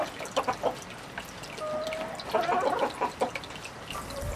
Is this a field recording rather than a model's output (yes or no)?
yes